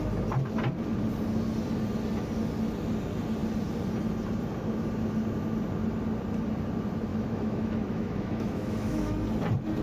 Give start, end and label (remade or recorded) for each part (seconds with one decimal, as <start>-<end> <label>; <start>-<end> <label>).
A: 0.0-7.1 recorded; 7.1-9.1 remade; 9.1-9.8 recorded